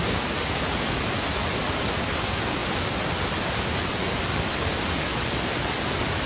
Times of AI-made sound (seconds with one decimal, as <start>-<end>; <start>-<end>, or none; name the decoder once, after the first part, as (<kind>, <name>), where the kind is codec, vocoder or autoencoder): none